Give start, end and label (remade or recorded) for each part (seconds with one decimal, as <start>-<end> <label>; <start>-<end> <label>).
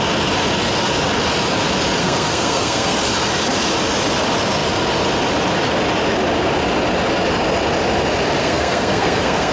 0.0-2.0 recorded; 2.0-3.0 remade; 3.0-8.4 recorded; 8.4-9.5 remade